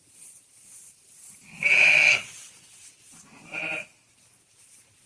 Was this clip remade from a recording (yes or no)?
yes